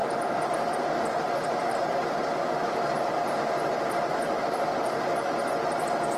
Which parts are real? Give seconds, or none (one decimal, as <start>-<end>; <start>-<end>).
none